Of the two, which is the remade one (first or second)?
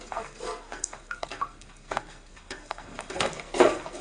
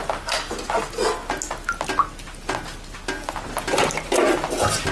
first